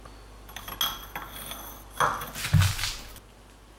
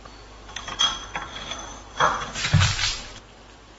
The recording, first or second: first